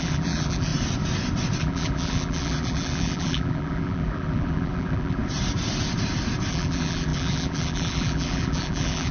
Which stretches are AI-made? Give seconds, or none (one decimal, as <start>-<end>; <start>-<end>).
0.0-0.7; 1.6-5.2; 6.5-9.1

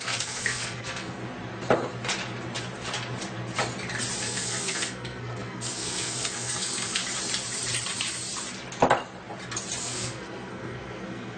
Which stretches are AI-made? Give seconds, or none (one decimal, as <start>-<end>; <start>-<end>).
0.0-1.2; 4.2-7.0; 9.8-11.4

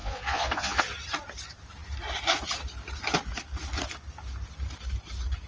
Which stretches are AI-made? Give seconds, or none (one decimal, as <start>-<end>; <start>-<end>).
0.0-0.8

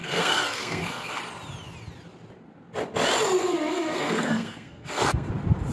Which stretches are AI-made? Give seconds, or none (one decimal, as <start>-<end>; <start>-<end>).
0.0-1.2; 3.4-5.3